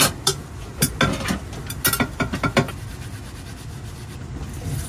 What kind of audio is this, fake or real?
real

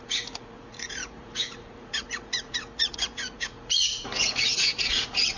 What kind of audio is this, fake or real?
fake